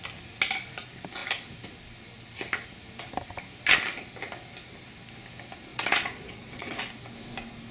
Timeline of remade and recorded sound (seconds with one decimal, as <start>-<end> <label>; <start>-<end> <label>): 0.0-5.7 recorded; 5.7-6.8 remade; 6.8-7.7 recorded